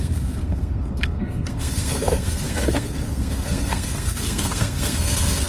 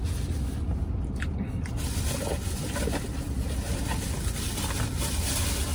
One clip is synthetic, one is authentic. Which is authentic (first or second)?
second